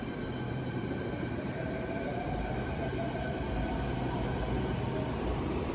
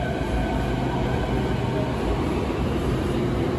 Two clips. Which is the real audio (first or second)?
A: second